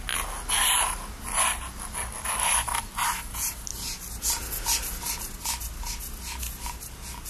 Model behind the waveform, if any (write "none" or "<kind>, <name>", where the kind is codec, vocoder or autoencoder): none